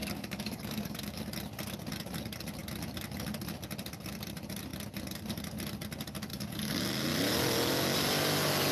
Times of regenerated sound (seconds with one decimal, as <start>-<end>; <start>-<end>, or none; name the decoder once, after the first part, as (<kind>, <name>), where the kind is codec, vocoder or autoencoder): 0.0-1.2 (codec, DAC); 6.3-6.8